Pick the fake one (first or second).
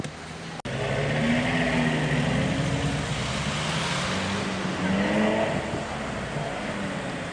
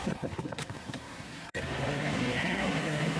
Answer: second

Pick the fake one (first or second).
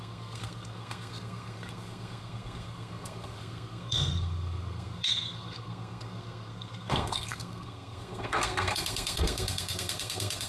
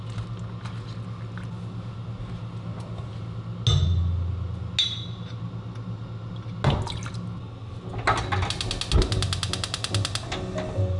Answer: first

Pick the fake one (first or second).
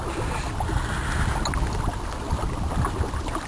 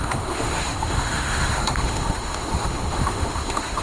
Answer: second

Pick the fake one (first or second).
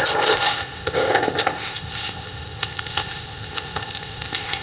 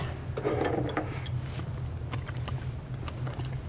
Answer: first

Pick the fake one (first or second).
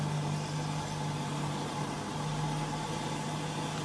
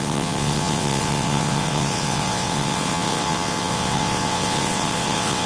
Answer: second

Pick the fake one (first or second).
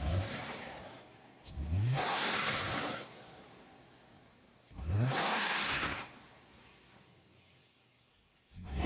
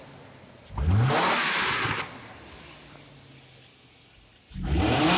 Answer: first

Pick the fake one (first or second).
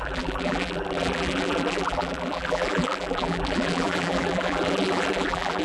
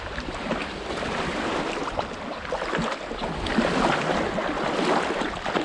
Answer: first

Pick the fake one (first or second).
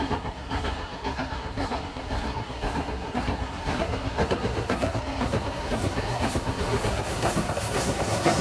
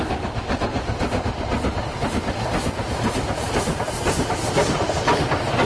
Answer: first